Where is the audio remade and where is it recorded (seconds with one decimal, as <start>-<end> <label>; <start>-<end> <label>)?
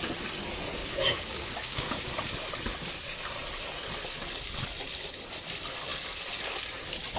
0.0-0.8 recorded; 0.8-1.9 remade; 1.9-7.2 recorded